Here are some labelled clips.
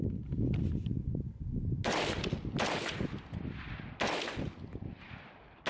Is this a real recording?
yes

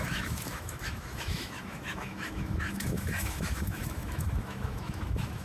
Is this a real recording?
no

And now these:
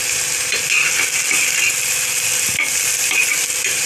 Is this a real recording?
yes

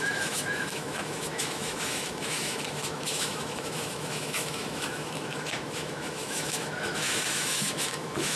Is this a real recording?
no